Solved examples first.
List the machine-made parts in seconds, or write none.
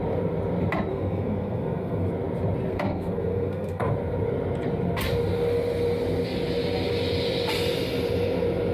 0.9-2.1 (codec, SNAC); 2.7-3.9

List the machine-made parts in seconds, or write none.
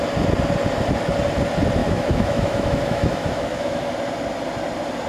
1.8-3.9 (autoencoder, DAC-VAE)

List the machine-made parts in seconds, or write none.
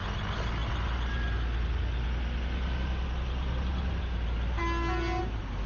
none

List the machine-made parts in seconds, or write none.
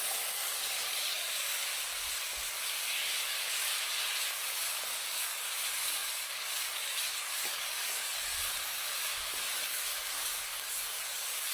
0.0-1.7 (codec, DAC); 2.5-3.7; 4.3-11.5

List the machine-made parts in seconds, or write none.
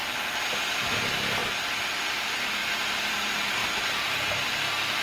2.6-3.1 (vocoder, BigVGAN v2)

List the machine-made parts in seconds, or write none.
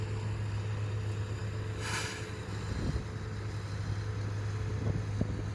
none